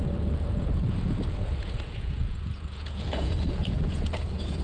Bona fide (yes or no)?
no